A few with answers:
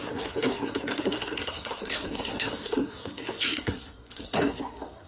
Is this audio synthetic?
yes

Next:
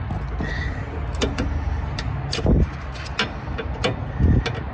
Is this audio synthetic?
no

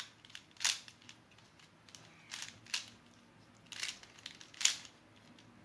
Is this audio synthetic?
no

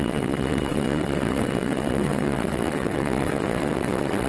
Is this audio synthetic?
yes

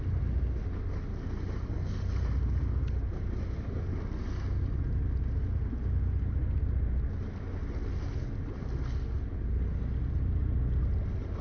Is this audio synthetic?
no